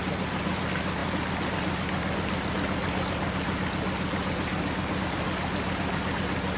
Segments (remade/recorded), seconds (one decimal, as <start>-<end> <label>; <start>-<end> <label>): 0.0-6.6 recorded